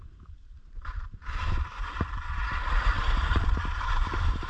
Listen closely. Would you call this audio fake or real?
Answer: fake